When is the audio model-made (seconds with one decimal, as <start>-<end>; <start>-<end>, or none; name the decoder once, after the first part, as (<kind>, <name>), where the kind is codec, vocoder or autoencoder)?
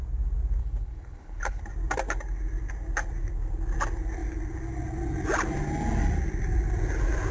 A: 0.6-1.6 (codec, HILCodec)